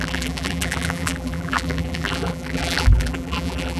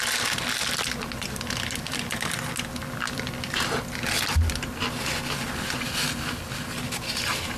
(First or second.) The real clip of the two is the second